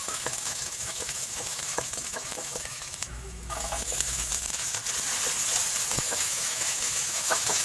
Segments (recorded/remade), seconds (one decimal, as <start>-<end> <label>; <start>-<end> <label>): 0.0-4.8 remade; 4.8-5.9 recorded; 5.9-7.6 remade